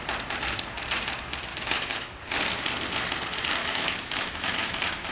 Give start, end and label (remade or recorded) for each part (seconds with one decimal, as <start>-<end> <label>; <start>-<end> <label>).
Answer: 0.0-1.5 recorded; 1.5-2.1 remade; 2.1-3.6 recorded; 3.6-5.1 remade